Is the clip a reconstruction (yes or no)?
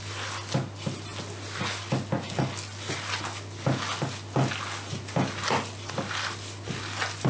no